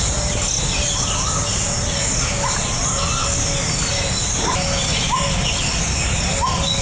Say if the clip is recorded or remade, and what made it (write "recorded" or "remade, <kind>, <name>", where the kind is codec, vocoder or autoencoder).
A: recorded